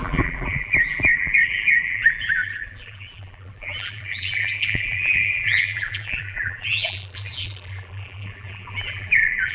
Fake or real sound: fake